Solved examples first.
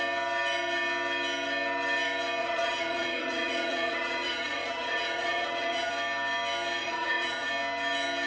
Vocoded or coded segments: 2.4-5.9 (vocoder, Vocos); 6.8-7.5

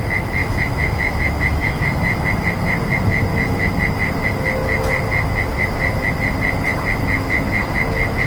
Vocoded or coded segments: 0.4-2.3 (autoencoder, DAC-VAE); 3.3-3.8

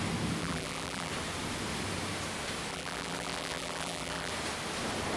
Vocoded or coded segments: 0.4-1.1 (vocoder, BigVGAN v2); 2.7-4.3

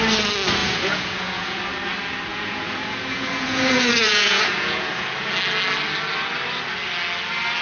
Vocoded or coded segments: 0.6-1.6 (vocoder, Vocos); 2.3-5.3

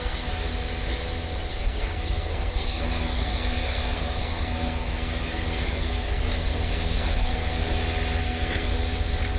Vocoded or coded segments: 0.0-0.5 (codec, SNAC); 1.5-7.6; 8.2-8.7